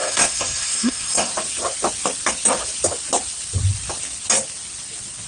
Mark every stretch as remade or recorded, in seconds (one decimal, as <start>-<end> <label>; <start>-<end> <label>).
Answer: 0.0-1.3 remade; 1.3-5.3 recorded